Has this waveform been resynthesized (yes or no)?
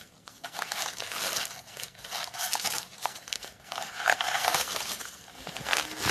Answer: yes